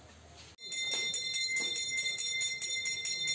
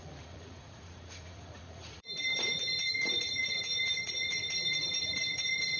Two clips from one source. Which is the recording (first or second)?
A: first